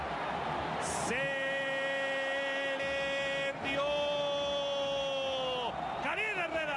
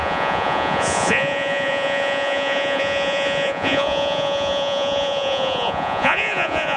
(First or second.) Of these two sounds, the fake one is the second